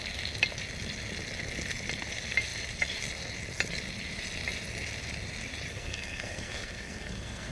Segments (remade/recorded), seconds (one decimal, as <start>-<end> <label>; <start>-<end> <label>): 0.0-5.7 recorded; 5.7-7.5 remade